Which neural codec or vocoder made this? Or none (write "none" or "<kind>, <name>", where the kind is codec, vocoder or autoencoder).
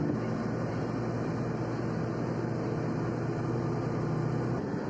none